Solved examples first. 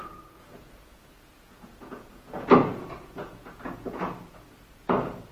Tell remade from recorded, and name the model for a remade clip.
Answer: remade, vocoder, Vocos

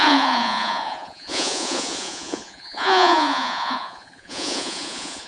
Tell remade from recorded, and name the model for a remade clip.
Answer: remade, vocoder, Vocos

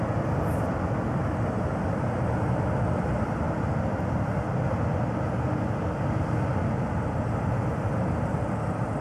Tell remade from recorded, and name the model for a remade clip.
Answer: recorded